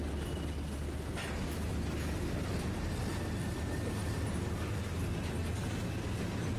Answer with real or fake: real